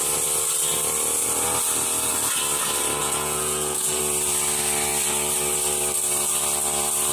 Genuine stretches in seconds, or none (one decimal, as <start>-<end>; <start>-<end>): 0.0-3.0; 4.0-7.1